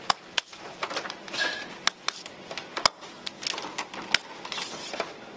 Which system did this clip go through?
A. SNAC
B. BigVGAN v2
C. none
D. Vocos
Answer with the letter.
C